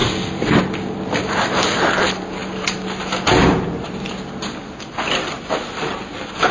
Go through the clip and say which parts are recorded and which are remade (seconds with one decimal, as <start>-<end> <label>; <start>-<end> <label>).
0.0-1.2 recorded; 1.2-2.0 remade; 2.0-6.5 recorded